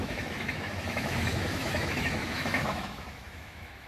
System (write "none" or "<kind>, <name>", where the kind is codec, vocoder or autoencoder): autoencoder, DAC-VAE